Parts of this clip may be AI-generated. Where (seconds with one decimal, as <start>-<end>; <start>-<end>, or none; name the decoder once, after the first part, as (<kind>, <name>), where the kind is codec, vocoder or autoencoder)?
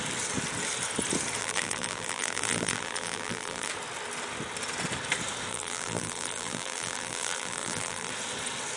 1.4-3.7 (vocoder, BigVGAN v2); 5.5-8.1